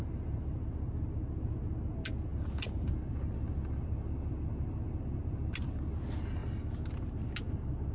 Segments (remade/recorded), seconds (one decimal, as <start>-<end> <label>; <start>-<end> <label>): 0.0-7.9 recorded